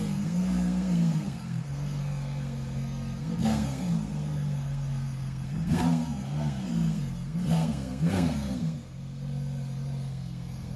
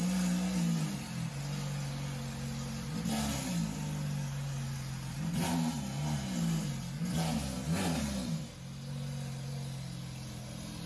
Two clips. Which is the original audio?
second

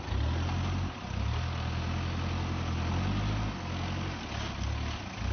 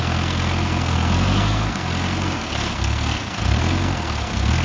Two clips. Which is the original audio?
first